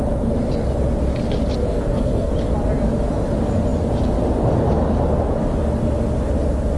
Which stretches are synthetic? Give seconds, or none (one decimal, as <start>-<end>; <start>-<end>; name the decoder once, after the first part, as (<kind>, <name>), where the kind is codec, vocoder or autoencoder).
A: 1.6-2.3 (codec, SNAC)